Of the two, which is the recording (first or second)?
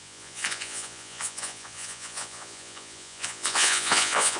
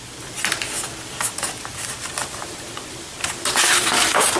second